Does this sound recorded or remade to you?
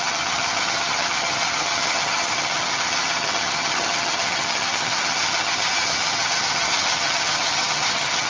remade